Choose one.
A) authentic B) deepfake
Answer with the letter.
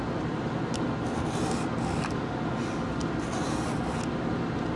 A